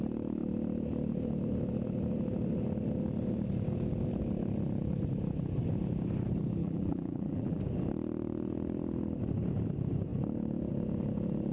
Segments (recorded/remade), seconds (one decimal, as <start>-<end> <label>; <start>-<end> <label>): 0.0-6.6 recorded; 6.6-7.6 remade; 7.6-11.5 recorded